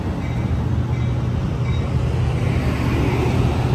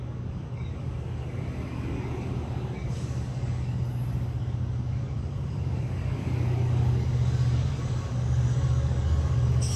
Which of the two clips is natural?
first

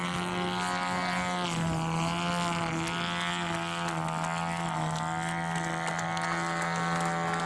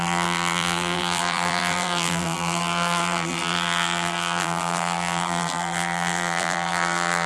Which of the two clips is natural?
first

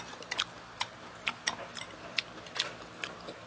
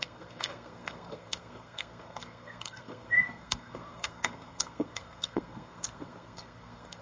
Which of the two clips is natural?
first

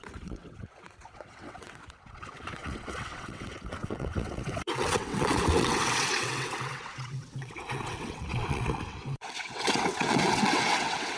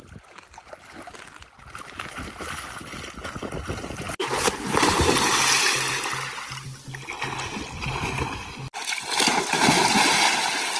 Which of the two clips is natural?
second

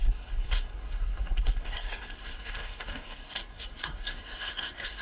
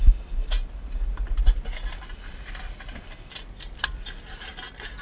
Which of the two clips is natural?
second